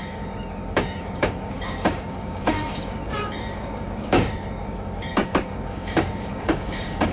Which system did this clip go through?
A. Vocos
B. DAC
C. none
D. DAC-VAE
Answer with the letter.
B